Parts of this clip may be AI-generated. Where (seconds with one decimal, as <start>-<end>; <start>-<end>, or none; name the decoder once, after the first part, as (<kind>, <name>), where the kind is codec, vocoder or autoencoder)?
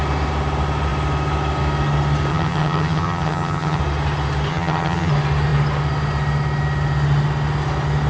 2.3-3.8 (vocoder, HiFi-GAN); 4.5-5.1